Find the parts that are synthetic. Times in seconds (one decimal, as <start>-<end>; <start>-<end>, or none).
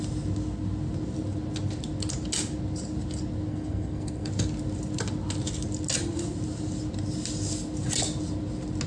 3.5-4.3